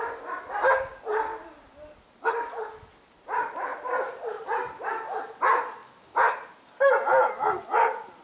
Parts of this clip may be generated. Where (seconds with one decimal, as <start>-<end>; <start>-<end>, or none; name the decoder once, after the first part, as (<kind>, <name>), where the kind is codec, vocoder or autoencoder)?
1.3-2.3 (vocoder, BigVGAN v2); 3.7-4.9